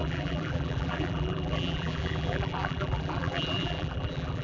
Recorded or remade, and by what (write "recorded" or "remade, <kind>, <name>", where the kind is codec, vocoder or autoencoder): remade, vocoder, BigVGAN v2